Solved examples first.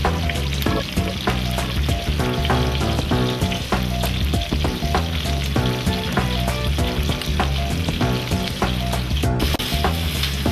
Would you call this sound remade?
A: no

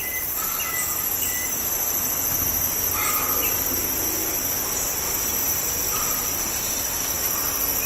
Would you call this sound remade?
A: no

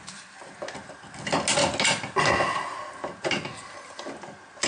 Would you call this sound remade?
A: no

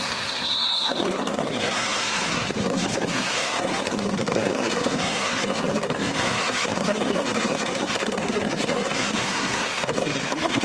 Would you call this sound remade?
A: yes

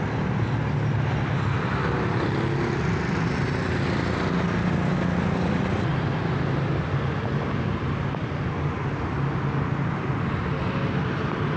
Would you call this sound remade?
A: no